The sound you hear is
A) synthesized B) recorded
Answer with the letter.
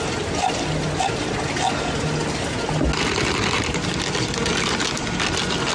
B